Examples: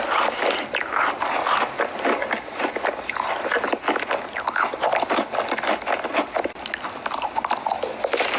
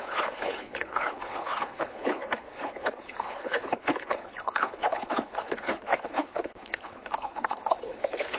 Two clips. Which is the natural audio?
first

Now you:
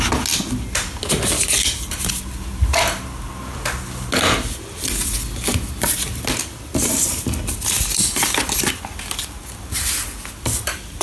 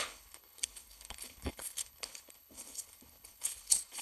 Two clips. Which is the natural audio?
first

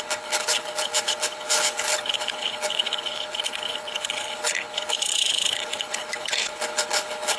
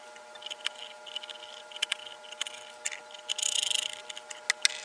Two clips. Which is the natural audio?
second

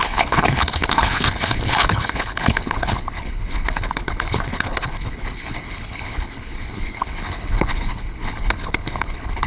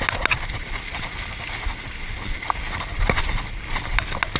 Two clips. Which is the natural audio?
second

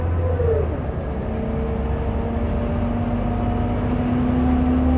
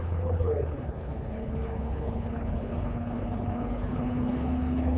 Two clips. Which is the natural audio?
first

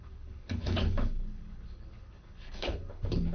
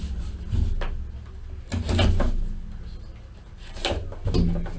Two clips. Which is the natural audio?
second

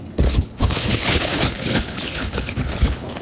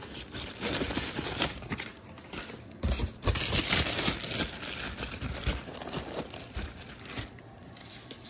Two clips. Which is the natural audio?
second